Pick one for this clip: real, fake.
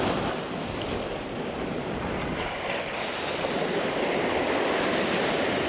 real